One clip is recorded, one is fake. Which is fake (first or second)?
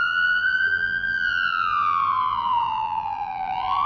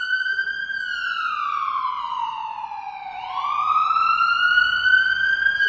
first